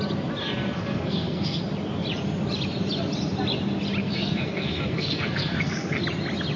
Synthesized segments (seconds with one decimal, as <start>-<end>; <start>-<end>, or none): 0.4-1.6; 4.0-6.0